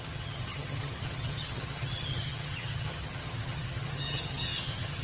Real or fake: fake